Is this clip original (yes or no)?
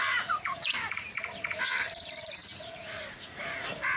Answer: no